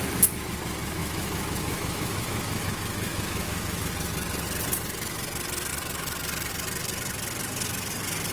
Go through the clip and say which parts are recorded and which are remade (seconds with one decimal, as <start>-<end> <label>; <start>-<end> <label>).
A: 0.0-1.0 recorded; 1.0-3.9 remade; 3.9-8.3 recorded